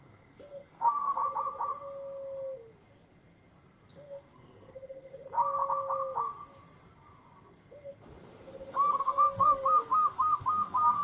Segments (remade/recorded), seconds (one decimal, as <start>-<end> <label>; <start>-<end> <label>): 0.0-1.2 remade; 1.2-3.9 recorded; 3.9-5.1 remade; 5.1-9.0 recorded; 9.0-11.0 remade